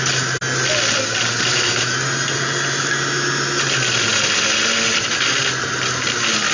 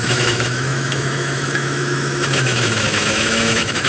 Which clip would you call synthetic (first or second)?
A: second